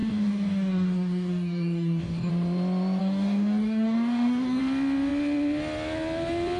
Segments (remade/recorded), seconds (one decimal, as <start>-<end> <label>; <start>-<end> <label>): 0.0-2.3 remade; 2.3-3.0 recorded; 3.0-4.6 remade; 4.6-6.6 recorded